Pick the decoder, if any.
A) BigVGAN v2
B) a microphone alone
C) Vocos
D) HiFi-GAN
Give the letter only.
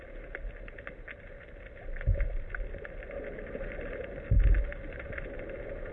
B